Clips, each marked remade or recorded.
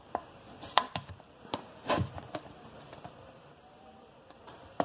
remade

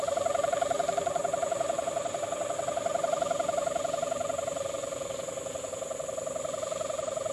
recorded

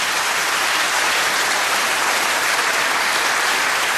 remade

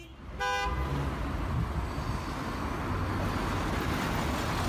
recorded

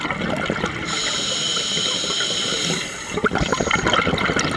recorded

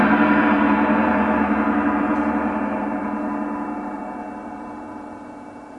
remade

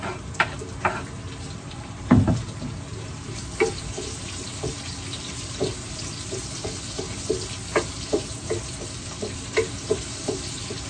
remade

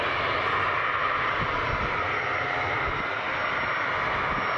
recorded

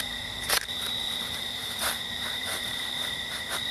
remade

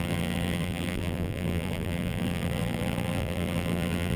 remade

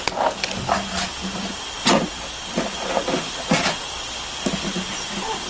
recorded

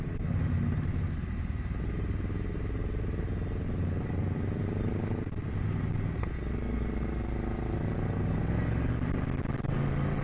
recorded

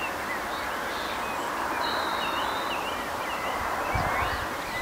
recorded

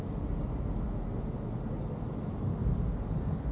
recorded